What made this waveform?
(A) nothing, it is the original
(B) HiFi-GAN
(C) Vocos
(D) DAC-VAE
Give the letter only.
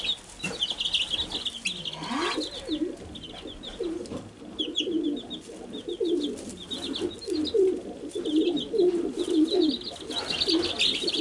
A